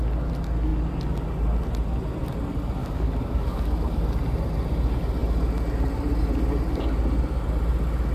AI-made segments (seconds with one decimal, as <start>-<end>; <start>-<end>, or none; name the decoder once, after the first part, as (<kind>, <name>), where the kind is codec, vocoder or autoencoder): 2.8-4.0 (codec, DAC)